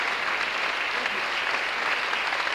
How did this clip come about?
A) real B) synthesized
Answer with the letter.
A